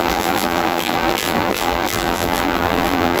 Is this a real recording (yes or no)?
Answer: no